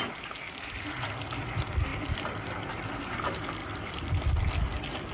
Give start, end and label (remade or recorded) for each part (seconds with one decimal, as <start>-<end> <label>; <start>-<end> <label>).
0.0-5.1 recorded